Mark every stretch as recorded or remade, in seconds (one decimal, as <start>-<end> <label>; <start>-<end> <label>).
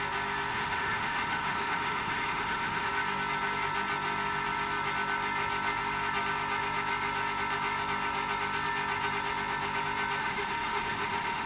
0.0-0.5 recorded; 0.5-2.9 remade; 2.9-10.2 recorded; 10.2-11.5 remade